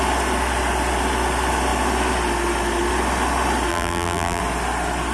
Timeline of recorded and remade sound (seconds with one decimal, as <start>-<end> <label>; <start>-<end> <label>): 0.0-3.7 recorded; 3.7-4.4 remade; 4.4-5.1 recorded